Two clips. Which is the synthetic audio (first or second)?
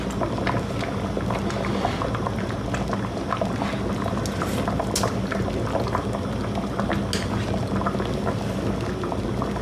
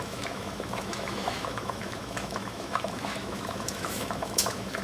second